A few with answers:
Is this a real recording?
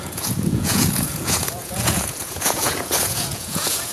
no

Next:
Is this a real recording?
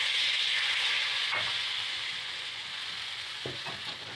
no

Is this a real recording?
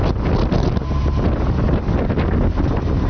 yes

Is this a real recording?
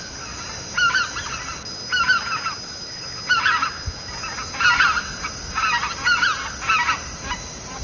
yes